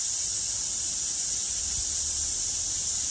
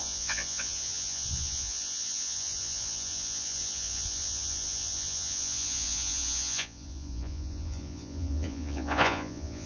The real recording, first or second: first